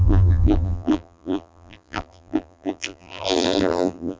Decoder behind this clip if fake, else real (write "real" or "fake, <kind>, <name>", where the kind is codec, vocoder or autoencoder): fake, vocoder, BigVGAN v2